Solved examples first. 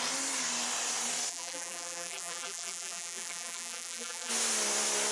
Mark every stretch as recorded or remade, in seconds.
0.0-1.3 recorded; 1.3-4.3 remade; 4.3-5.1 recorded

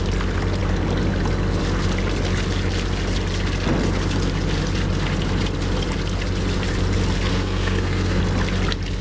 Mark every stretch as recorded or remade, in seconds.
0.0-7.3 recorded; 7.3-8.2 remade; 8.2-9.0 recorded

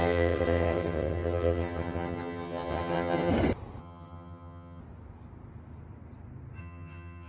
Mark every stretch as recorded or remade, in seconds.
0.0-3.3 remade; 3.3-3.8 recorded; 3.8-4.8 remade; 4.8-6.6 recorded; 6.6-7.3 remade

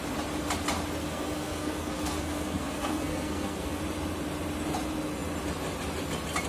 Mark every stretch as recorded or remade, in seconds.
0.0-1.0 recorded; 1.0-3.8 remade; 3.8-6.5 recorded